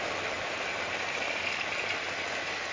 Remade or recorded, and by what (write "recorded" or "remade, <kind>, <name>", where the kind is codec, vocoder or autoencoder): recorded